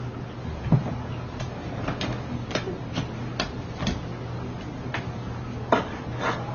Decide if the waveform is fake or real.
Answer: real